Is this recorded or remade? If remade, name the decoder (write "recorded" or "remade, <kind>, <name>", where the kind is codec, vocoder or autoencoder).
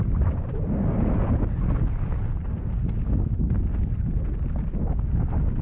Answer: recorded